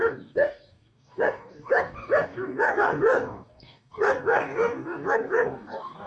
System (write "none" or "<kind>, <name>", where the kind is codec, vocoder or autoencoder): codec, DAC